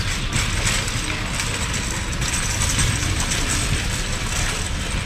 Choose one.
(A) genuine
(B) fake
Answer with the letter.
A